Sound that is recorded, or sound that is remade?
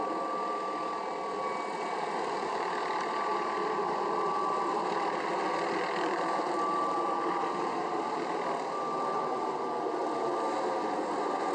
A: recorded